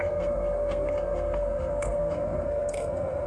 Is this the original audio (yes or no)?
no